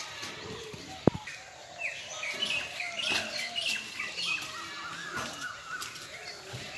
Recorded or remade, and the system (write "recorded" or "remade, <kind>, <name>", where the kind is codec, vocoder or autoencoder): recorded